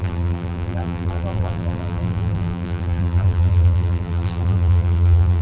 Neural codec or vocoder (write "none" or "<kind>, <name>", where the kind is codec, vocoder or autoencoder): vocoder, BigVGAN v2